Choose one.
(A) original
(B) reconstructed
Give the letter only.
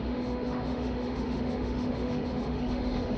B